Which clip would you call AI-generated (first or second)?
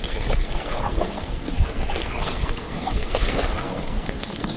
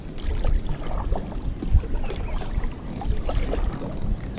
first